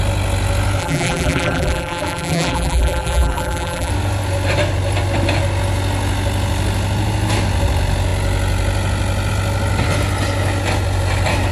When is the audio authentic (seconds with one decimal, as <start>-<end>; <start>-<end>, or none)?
0.0-0.8; 3.9-11.5